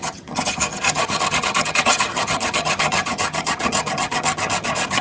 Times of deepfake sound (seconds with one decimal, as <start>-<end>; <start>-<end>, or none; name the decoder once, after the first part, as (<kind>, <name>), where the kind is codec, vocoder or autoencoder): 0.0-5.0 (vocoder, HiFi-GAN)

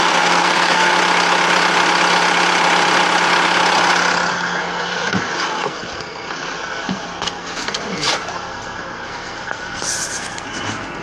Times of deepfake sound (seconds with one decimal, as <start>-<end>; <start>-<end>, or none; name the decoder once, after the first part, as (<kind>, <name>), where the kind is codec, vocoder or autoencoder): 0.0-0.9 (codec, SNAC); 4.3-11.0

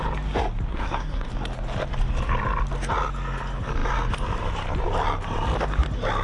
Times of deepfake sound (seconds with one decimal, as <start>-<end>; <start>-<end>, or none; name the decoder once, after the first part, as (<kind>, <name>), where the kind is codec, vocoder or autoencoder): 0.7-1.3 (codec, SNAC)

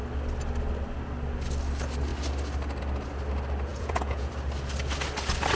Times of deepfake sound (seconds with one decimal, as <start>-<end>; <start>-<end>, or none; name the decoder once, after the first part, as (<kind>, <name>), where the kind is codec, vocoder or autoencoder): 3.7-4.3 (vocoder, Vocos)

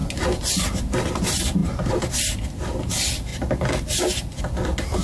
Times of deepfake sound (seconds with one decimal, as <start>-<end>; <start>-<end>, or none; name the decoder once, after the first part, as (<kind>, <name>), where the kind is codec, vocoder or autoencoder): none

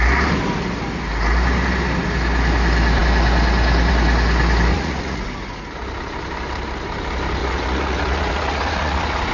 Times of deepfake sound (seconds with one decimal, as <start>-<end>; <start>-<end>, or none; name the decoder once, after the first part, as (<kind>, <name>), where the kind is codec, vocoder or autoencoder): 4.7-5.3 (vocoder, Vocos); 7.4-9.3

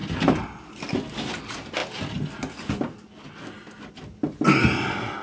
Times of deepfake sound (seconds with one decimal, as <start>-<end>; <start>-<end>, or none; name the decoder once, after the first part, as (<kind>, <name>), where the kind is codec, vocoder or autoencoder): none